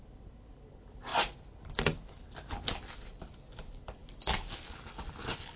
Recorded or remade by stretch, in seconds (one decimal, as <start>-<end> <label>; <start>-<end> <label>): 0.0-5.6 recorded